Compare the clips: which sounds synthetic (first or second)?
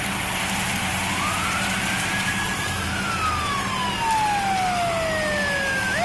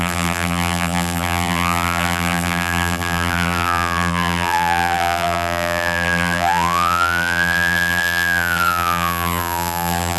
second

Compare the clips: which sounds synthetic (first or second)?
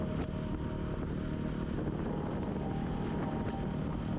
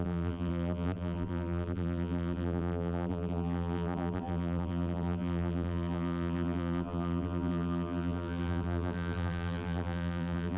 second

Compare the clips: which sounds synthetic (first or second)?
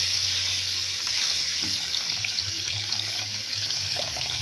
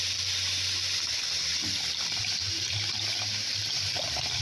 first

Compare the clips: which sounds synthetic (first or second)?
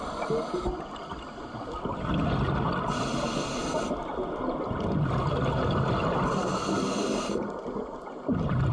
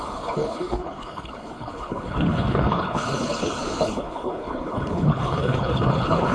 second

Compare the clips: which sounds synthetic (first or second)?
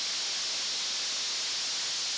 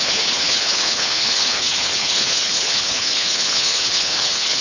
second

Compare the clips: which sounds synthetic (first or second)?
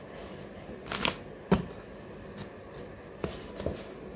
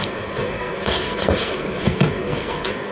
second